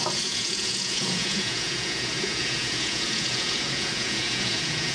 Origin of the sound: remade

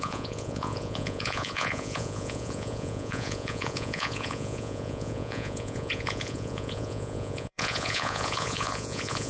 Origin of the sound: remade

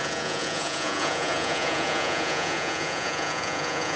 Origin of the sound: remade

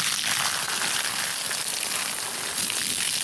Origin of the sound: recorded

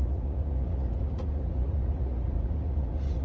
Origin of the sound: remade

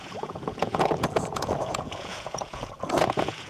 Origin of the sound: remade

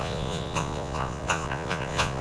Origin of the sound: remade